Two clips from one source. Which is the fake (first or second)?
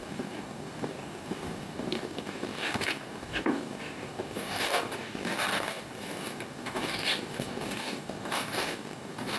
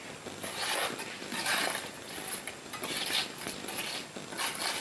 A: first